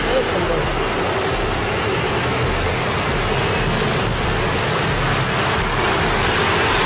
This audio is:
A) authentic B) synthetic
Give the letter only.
A